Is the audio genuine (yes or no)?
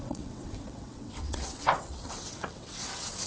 no